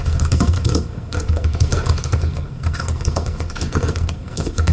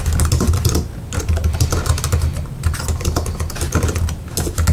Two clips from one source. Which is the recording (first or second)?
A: second